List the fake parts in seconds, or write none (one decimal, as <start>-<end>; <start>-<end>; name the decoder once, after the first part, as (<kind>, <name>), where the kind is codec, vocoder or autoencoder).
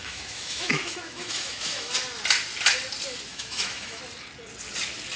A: 0.0-1.9 (autoencoder, DAC-VAE); 3.3-4.0